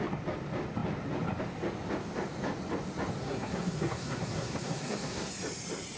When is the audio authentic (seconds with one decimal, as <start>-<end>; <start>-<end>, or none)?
0.0-3.2; 5.3-6.0